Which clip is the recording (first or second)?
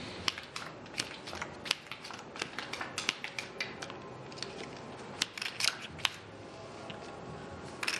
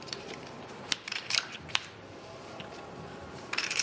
first